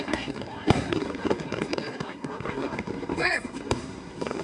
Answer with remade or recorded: remade